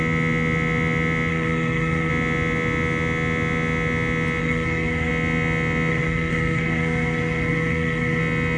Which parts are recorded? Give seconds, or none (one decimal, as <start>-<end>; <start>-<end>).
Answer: 0.0-1.3; 2.1-4.4; 5.1-5.9; 8.2-8.6